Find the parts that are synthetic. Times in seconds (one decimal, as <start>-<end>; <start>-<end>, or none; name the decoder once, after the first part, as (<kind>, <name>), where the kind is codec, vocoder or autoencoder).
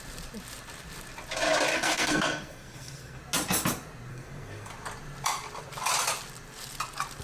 1.7-3.2 (codec, SNAC); 4.1-4.7